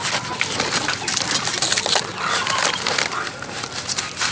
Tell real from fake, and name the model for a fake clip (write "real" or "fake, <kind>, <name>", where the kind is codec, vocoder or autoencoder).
real